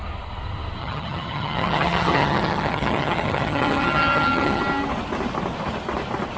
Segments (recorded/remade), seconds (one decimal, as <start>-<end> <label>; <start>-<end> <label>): 0.0-0.8 recorded; 0.8-4.6 remade; 4.6-6.4 recorded